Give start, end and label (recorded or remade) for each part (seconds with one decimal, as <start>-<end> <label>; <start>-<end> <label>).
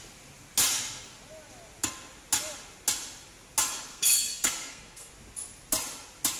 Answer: 0.0-3.9 recorded; 3.9-5.1 remade; 5.1-6.4 recorded